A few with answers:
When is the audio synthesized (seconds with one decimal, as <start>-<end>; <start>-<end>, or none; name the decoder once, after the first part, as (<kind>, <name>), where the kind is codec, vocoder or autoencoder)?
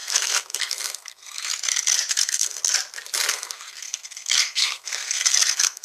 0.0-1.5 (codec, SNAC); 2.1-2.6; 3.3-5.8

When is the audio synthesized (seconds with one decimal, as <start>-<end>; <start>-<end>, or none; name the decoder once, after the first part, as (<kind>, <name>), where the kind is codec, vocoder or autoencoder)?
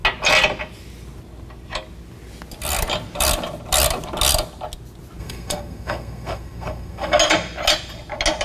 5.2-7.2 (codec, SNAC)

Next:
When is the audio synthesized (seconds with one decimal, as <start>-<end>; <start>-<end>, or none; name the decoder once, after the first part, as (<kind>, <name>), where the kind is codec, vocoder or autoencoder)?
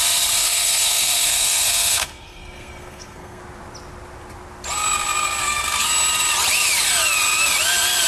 0.4-3.4 (codec, SNAC); 5.4-5.9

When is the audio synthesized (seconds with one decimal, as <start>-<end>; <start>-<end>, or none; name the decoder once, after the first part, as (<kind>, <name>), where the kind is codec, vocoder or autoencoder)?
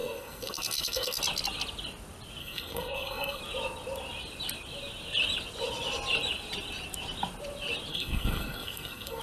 0.0-1.2 (codec, SNAC); 2.4-3.4; 7.9-9.2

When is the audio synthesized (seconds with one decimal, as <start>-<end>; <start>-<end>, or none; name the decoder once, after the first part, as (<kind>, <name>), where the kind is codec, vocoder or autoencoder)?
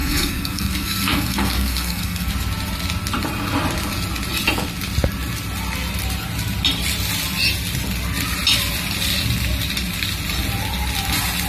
0.0-2.3 (codec, SNAC)